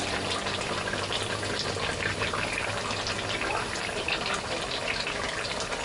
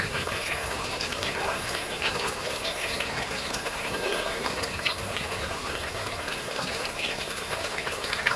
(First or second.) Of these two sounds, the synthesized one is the second